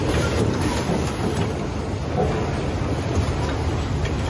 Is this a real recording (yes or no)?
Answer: yes